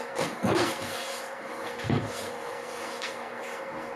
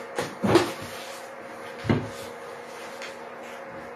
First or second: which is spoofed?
first